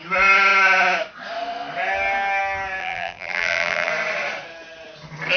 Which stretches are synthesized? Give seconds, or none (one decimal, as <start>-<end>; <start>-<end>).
2.8-3.9